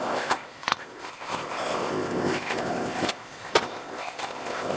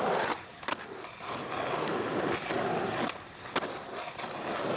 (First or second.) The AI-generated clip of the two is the first